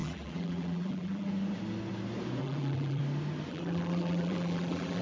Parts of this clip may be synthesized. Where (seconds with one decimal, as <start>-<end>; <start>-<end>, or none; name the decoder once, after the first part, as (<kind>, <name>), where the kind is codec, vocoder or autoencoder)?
0.0-1.3 (vocoder, BigVGAN v2); 2.4-3.0; 3.5-5.0